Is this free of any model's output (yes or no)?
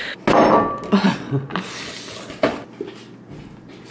yes